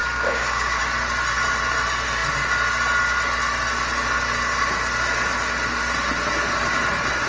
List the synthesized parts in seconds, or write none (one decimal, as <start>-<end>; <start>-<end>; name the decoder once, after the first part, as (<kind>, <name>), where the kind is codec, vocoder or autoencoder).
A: 0.0-0.8 (codec, DAC)